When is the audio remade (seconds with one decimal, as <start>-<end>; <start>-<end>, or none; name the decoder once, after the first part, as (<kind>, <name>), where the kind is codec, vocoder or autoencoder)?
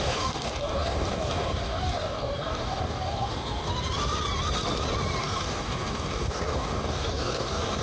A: 0.0-3.7 (codec, DAC); 5.2-7.8